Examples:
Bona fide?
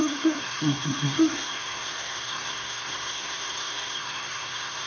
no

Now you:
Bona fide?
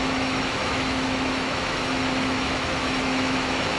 no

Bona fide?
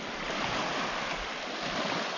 yes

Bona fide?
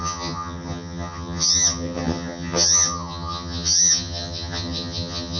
no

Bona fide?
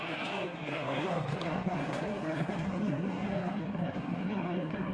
no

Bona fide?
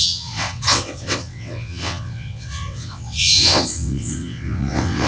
no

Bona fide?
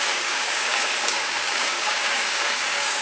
no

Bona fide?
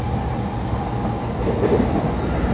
yes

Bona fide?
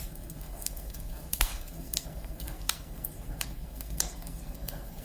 no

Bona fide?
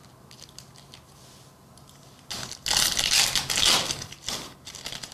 yes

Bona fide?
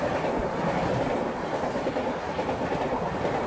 yes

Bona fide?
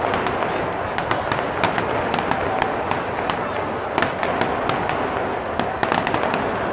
yes